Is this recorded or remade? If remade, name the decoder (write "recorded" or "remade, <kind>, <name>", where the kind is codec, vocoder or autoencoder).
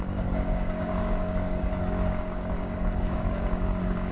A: remade, codec, DAC